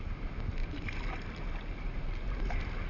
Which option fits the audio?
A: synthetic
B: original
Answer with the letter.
B